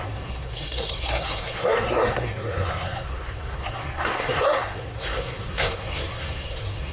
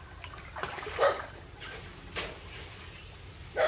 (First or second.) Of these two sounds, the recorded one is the second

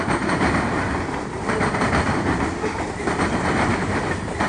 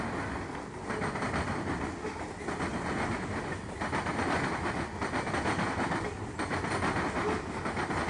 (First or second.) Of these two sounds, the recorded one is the second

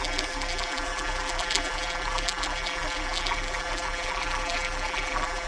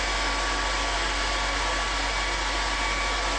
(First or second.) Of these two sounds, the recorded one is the second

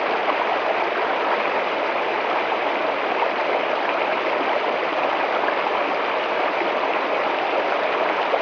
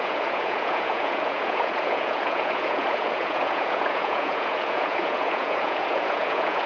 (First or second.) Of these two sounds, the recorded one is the first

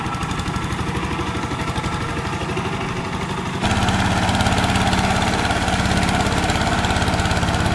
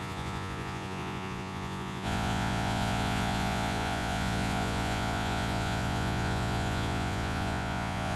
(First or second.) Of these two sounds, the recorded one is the first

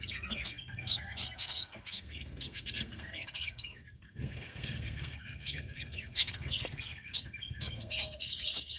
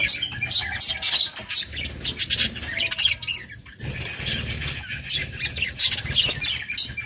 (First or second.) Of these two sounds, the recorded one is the second